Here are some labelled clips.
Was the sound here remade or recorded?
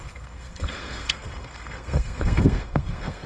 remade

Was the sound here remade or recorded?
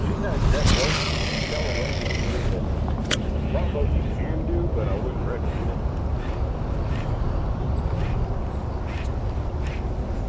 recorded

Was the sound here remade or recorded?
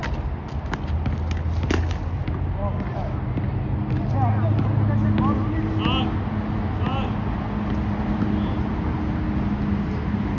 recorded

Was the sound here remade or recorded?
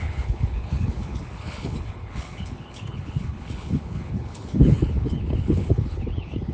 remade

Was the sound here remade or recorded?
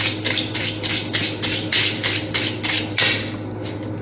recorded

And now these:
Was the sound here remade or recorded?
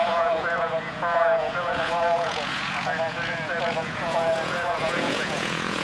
remade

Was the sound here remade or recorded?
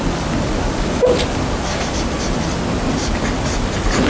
recorded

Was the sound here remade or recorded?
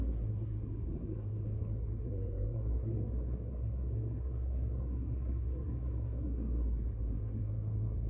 remade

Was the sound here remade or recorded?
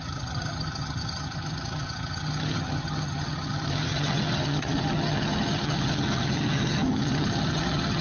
remade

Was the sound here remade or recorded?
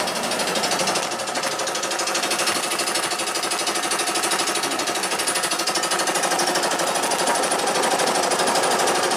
recorded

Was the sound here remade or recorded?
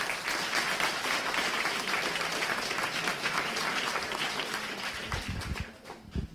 recorded